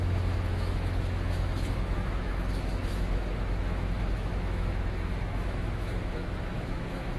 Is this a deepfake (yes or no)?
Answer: yes